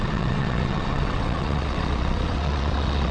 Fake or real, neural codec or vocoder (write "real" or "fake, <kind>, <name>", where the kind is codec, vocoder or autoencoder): fake, vocoder, WaveNeXt